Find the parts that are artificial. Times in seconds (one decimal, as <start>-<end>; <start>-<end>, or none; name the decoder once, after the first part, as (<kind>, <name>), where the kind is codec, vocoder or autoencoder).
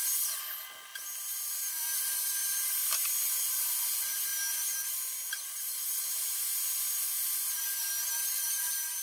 0.9-1.5 (vocoder, BigVGAN v2)